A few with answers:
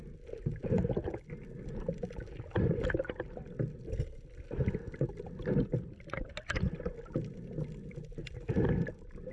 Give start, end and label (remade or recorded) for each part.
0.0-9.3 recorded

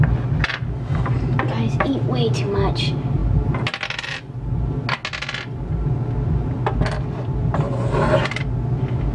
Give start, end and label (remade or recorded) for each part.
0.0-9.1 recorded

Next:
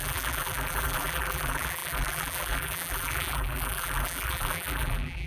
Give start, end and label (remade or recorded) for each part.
0.0-5.3 remade